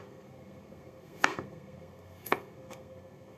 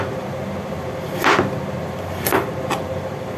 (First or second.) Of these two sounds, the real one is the second